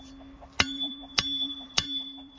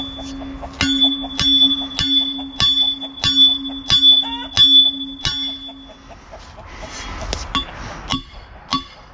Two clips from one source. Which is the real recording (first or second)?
second